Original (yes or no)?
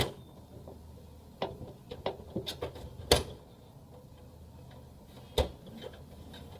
yes